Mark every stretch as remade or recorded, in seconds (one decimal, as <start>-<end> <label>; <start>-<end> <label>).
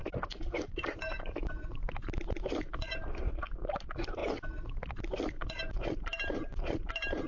0.0-4.2 remade; 4.2-5.0 recorded; 5.0-7.3 remade